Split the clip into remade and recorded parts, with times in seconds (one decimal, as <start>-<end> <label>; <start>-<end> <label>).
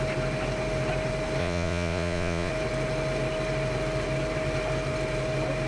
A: 0.0-1.4 recorded; 1.4-2.5 remade; 2.5-5.7 recorded